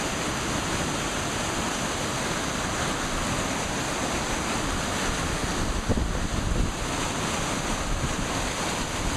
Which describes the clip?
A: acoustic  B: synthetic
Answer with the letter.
A